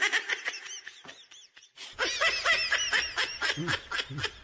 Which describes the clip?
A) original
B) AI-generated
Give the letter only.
A